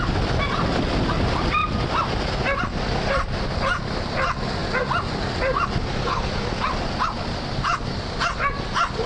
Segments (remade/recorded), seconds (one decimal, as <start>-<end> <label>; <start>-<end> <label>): 0.0-9.1 recorded